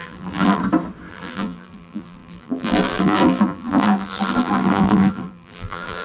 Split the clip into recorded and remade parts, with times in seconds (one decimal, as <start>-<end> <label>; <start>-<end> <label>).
0.0-0.6 remade; 0.6-1.1 recorded; 1.1-6.0 remade